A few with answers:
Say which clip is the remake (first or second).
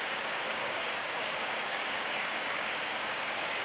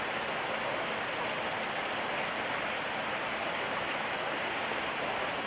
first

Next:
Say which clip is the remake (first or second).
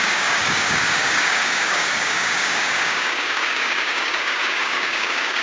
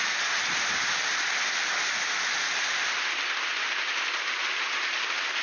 first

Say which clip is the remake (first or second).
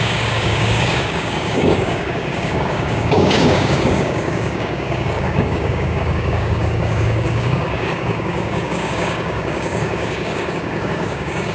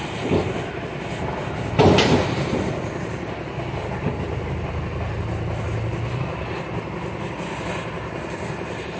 first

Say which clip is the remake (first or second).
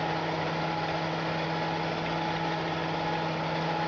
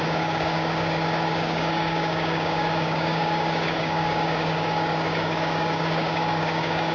second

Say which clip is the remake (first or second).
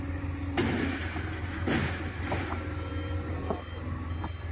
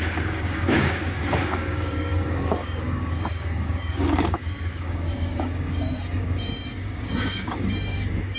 second